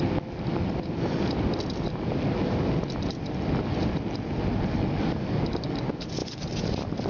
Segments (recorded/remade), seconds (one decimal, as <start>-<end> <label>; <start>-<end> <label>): 0.0-7.1 recorded